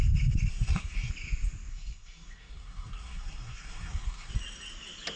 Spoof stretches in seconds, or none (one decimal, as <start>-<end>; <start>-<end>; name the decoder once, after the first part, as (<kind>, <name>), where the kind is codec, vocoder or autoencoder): 0.5-1.1 (codec, SNAC); 1.7-4.3